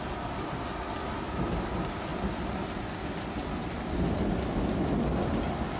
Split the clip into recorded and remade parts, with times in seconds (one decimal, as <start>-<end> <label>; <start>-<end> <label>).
0.0-5.8 recorded